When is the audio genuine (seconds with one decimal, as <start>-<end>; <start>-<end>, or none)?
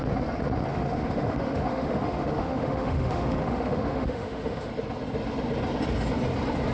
0.0-0.7; 4.7-6.7